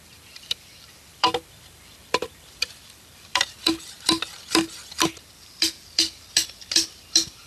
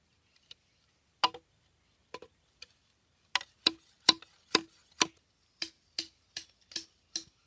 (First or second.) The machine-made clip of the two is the first